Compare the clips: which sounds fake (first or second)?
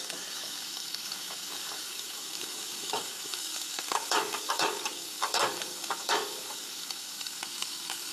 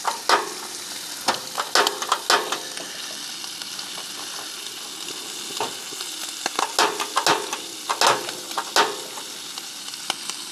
first